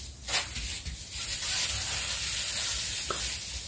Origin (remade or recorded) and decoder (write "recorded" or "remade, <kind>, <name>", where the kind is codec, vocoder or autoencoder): recorded